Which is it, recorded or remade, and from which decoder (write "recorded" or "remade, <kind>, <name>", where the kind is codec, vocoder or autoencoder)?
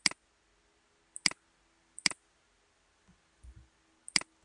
recorded